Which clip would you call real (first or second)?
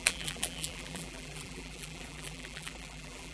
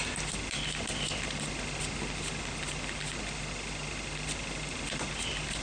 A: second